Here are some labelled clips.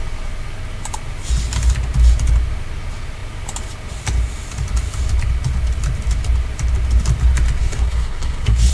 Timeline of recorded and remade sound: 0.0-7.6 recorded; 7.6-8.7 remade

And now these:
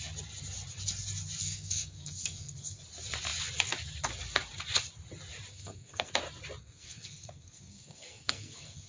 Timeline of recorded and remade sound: 0.0-1.4 recorded; 1.4-2.8 remade; 2.8-5.5 recorded; 5.5-6.1 remade; 6.1-6.6 recorded; 6.6-8.9 remade

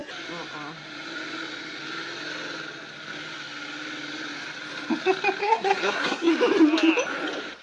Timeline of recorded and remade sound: 0.0-5.4 recorded; 5.4-6.3 remade; 6.3-7.6 recorded

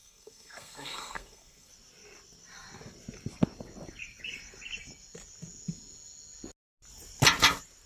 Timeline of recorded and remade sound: 0.0-1.7 remade; 1.7-7.9 recorded

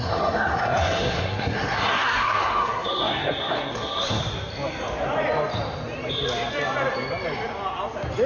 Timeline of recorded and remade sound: 0.0-4.2 remade; 4.2-8.3 recorded

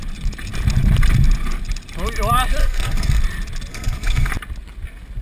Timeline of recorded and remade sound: 0.0-2.6 recorded; 2.6-3.2 remade; 3.2-3.7 recorded; 3.7-4.3 remade; 4.3-5.2 recorded

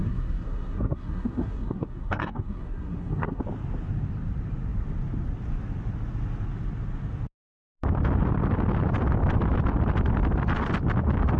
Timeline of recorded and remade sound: 0.0-3.4 remade; 3.4-11.4 recorded